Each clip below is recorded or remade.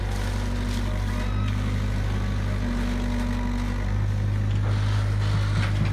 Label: recorded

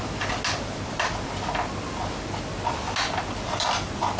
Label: recorded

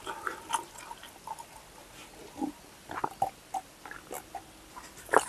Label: recorded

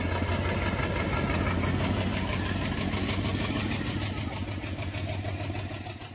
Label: recorded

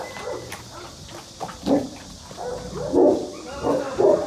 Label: recorded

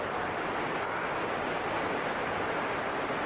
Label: recorded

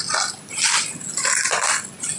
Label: recorded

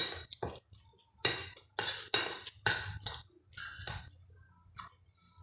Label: recorded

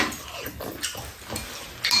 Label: recorded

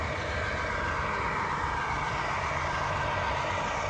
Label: recorded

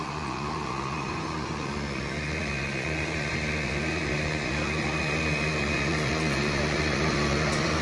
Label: remade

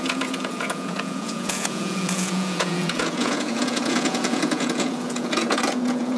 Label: remade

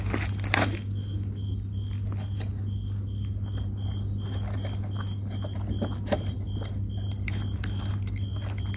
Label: recorded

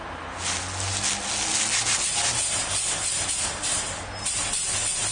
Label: recorded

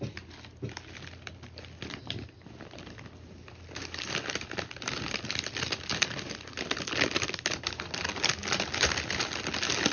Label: recorded